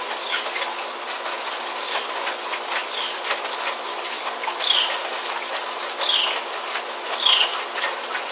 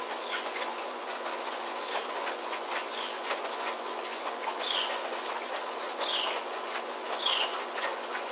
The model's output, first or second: second